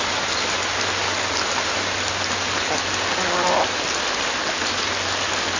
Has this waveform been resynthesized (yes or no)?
no